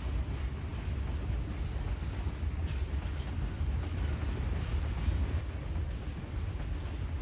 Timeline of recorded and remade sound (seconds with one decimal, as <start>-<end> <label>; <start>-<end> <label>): 0.0-7.2 recorded

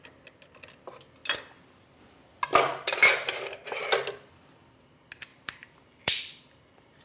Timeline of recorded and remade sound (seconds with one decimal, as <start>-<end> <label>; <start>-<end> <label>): 0.0-5.3 recorded; 5.3-7.0 remade

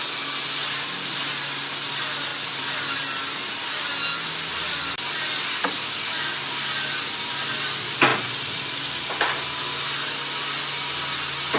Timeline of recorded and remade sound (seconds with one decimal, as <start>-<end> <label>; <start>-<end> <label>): 0.0-2.3 recorded; 2.3-3.2 remade; 3.2-11.6 recorded

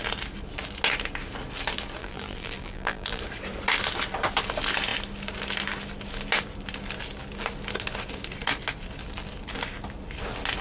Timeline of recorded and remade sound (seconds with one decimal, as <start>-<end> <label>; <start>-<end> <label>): 0.0-2.0 recorded; 2.0-3.2 remade; 3.2-10.6 recorded

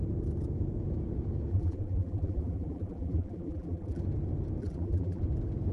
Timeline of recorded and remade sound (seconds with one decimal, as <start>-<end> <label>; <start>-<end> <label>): 0.0-1.5 recorded; 1.5-4.0 remade; 4.0-4.6 recorded; 4.6-5.2 remade; 5.2-5.7 recorded

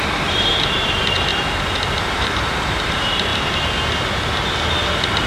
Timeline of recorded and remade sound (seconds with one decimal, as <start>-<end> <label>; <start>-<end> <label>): 0.0-1.3 remade; 1.3-2.0 recorded; 2.0-3.3 remade; 3.3-5.3 recorded

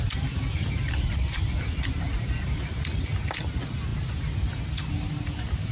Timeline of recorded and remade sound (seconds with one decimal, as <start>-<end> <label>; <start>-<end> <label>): 0.0-5.7 recorded

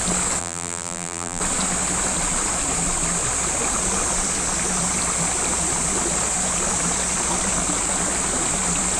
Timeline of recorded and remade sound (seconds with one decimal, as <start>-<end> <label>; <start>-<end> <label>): 0.0-0.4 recorded; 0.4-1.4 remade; 1.4-9.0 recorded